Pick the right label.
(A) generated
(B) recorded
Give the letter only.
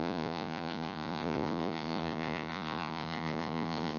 A